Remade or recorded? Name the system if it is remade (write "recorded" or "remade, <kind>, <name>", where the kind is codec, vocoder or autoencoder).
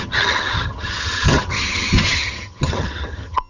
remade, vocoder, HiFi-GAN